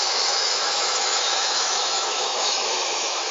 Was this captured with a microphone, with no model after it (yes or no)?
no